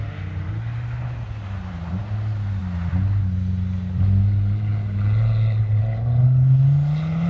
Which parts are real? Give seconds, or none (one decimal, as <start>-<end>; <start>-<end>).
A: 0.0-7.3